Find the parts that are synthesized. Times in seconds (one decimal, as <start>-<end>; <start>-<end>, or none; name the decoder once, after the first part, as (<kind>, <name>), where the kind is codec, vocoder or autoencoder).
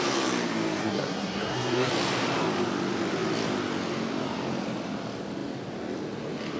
0.8-1.9 (codec, SNAC)